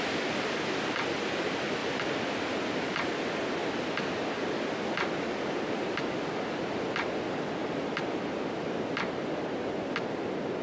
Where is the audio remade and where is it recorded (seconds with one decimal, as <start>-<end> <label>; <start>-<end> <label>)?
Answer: 0.0-10.6 recorded